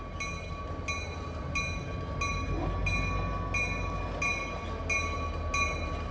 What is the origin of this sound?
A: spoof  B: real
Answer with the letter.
B